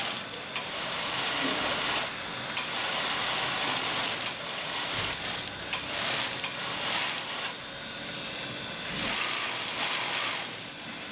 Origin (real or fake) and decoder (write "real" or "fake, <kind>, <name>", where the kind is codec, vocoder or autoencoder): real